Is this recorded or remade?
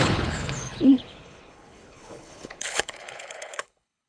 remade